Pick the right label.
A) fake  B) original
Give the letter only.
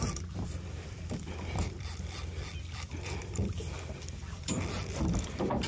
A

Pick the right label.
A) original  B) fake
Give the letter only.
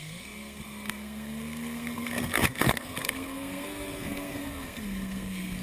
B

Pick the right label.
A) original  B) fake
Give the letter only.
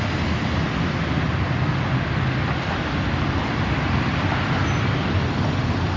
A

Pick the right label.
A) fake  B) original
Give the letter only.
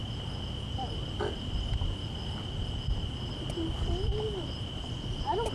B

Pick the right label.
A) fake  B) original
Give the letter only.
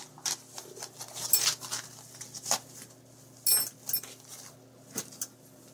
B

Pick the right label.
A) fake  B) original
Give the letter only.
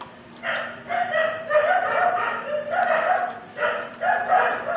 A